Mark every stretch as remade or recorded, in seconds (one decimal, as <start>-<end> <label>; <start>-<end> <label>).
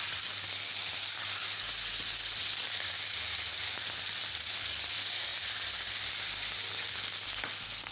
0.0-7.9 recorded